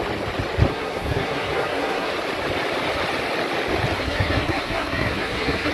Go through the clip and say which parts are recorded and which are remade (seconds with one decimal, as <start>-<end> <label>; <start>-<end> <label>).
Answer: 0.0-0.7 recorded; 0.7-2.1 remade; 2.1-4.0 recorded; 4.0-5.7 remade